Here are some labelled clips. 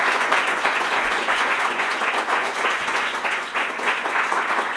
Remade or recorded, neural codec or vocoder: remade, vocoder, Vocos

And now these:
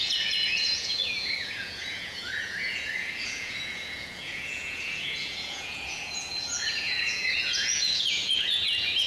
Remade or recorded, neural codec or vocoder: remade, vocoder, Vocos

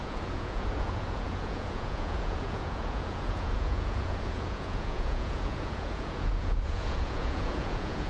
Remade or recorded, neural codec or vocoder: remade, vocoder, Vocos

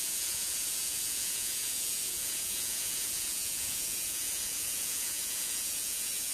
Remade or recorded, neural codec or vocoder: remade, vocoder, Vocos